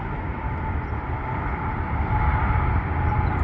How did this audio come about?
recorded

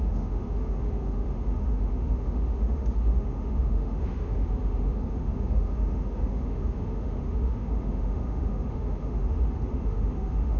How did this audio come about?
remade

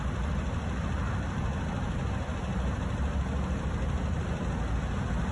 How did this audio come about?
recorded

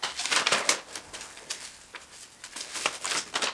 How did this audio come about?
remade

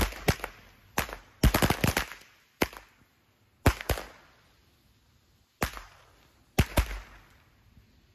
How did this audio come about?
recorded